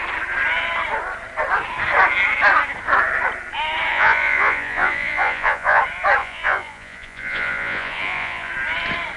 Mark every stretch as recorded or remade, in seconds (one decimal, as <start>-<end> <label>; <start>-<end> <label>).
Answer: 0.0-3.9 recorded; 3.9-5.8 remade; 5.8-6.2 recorded; 6.2-8.5 remade; 8.5-9.2 recorded